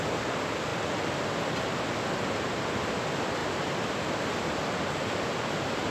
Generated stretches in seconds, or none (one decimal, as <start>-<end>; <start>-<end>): 3.4-4.1